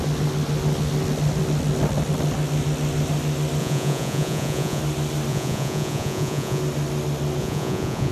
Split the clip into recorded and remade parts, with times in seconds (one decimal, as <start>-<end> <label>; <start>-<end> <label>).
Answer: 0.0-3.6 recorded; 3.6-4.8 remade; 4.8-5.3 recorded; 5.3-6.6 remade; 6.6-7.4 recorded; 7.4-8.1 remade